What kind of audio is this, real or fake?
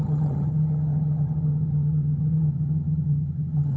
fake